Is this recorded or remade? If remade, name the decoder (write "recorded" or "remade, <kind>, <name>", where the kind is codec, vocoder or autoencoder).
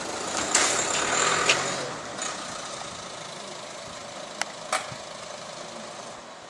recorded